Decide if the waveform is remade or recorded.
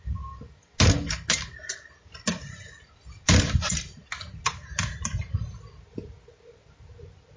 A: recorded